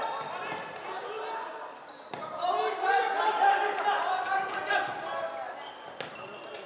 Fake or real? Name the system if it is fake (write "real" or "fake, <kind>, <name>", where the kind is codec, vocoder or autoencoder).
real